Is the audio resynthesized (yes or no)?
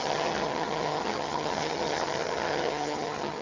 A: yes